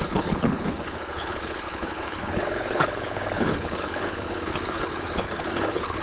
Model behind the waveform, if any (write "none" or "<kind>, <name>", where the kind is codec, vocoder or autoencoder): codec, HILCodec